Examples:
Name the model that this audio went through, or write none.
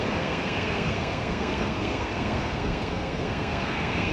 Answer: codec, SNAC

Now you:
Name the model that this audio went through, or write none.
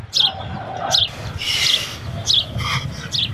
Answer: none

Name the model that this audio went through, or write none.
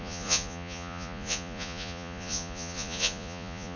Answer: vocoder, Vocos